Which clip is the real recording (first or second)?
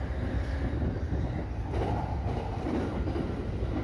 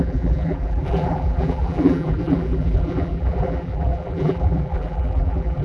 first